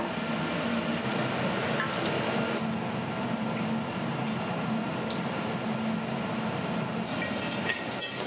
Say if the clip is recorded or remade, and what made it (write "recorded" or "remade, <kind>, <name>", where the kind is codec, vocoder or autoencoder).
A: recorded